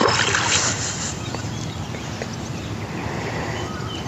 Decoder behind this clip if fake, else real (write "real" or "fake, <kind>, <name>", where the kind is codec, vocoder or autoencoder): real